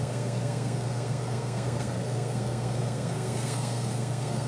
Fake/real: fake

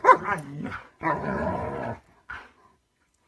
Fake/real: fake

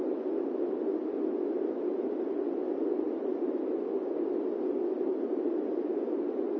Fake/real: real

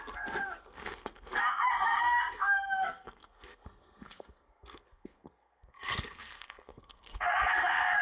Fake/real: fake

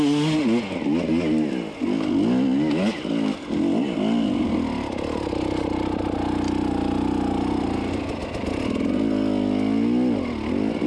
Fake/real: real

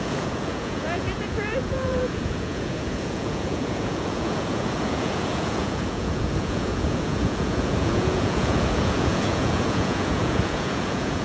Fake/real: fake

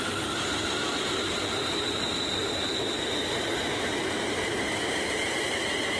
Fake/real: fake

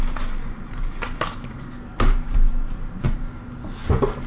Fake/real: real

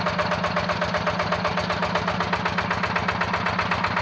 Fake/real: real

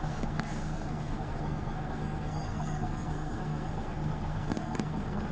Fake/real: fake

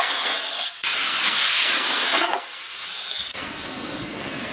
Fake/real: fake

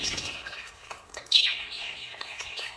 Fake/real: fake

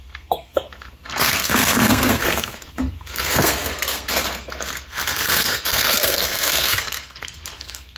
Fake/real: fake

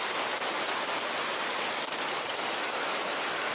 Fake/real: real